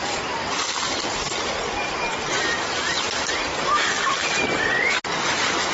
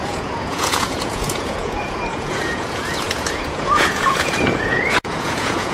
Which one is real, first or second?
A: first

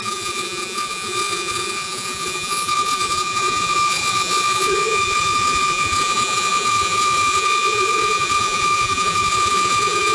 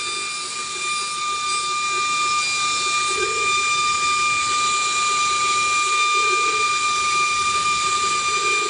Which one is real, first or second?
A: second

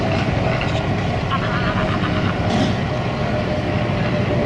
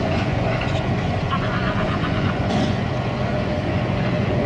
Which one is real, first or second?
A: first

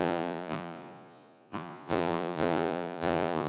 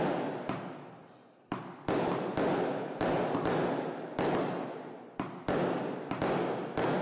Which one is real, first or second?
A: second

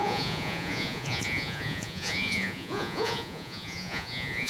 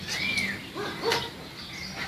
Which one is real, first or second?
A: second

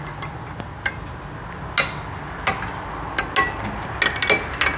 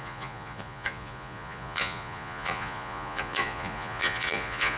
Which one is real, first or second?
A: first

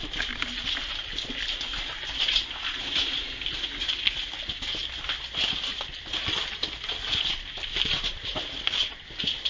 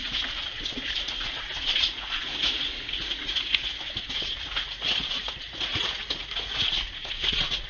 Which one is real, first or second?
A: first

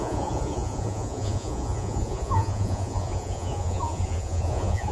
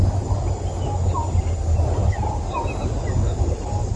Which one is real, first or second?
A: second